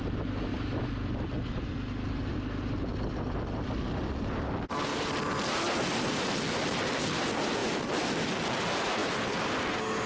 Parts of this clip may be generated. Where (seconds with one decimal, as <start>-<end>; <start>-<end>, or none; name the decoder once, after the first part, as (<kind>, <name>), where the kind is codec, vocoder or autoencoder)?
0.5-1.5 (vocoder, BigVGAN v2); 7.6-8.1; 9.0-10.1